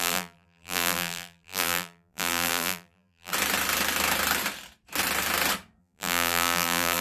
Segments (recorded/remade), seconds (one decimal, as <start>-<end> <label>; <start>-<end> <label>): 0.0-3.3 remade; 3.3-5.8 recorded; 5.8-7.0 remade